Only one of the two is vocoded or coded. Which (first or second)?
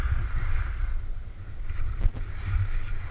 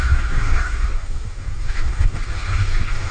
second